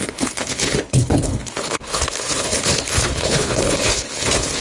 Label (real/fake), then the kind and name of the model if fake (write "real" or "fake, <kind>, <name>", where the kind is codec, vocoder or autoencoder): fake, codec, HILCodec